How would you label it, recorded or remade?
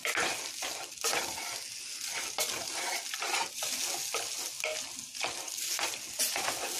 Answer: recorded